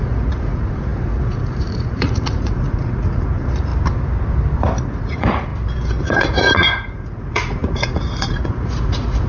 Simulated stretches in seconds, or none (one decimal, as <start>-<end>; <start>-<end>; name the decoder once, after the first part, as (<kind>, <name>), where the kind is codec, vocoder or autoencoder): 0.0-3.7 (vocoder, Vocos); 4.8-5.5; 6.0-9.3